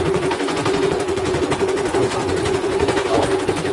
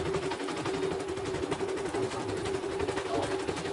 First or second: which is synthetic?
first